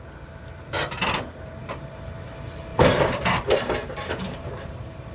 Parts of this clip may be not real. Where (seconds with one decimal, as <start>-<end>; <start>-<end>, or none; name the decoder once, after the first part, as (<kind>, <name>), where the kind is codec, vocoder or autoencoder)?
2.7-5.1 (vocoder, BigVGAN v2)